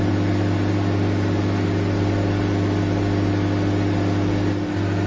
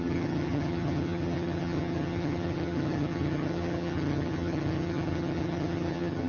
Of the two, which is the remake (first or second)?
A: second